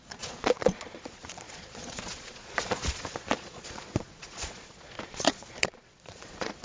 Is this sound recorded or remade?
remade